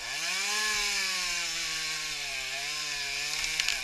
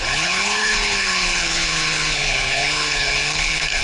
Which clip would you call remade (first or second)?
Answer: second